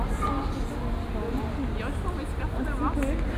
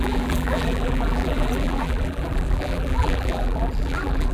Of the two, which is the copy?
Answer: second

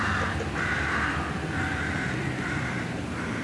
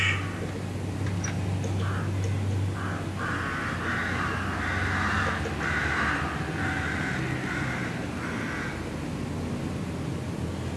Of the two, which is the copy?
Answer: first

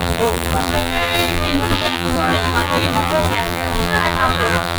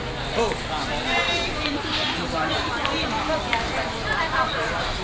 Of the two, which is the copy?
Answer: first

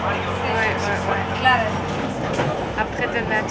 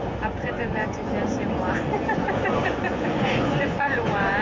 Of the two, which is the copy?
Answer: second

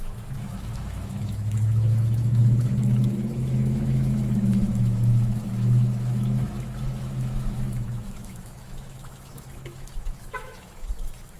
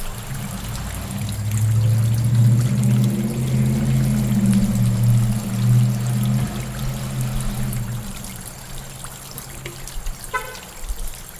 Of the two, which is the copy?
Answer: first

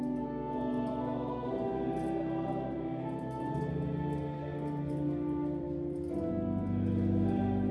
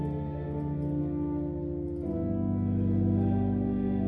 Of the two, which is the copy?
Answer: first